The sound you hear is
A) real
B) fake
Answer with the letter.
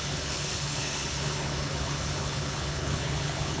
B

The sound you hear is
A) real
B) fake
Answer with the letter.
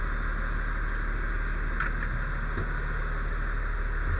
A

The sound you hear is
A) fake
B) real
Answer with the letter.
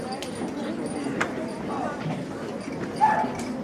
B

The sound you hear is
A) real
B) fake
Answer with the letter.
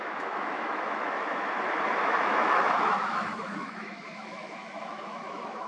B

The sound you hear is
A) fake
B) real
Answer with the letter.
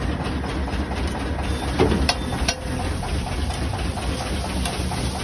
B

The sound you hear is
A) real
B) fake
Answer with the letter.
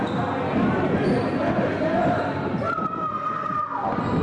A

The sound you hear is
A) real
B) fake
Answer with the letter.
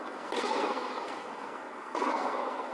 B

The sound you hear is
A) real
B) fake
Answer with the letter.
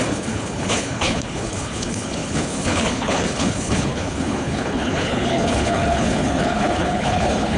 B